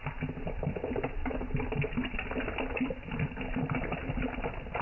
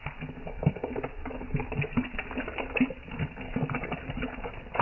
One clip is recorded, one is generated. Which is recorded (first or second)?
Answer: first